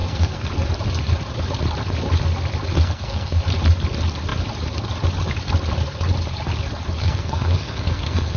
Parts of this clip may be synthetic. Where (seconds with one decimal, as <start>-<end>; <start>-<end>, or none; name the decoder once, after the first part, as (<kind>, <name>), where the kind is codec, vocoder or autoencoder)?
0.0-0.5 (codec, SNAC); 2.7-3.4; 7.0-8.4